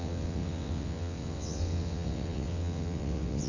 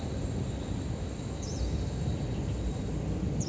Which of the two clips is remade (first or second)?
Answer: first